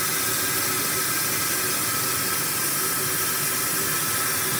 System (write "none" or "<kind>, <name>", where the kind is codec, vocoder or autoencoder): none